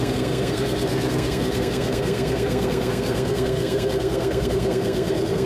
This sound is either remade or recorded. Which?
remade